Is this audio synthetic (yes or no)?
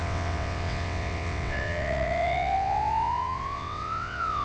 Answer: yes